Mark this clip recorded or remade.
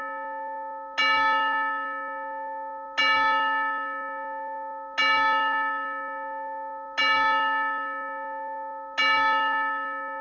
recorded